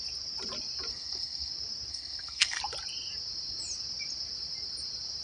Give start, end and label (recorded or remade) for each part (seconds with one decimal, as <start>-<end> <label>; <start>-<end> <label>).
0.0-0.9 recorded; 0.9-1.5 remade; 1.5-1.9 recorded; 1.9-2.6 remade; 2.6-5.2 recorded